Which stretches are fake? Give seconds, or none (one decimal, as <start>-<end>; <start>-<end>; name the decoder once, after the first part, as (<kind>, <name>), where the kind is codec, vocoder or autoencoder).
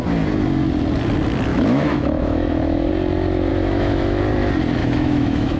1.5-2.9 (autoencoder, DAC-VAE); 3.5-4.2; 4.8-5.6